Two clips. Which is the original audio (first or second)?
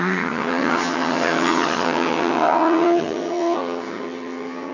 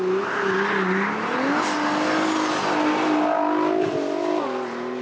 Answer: second